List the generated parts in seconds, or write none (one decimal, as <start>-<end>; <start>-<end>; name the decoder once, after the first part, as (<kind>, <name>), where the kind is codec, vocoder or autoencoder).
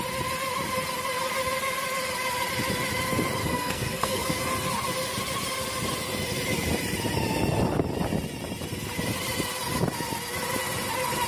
3.4-4.4 (codec, SNAC)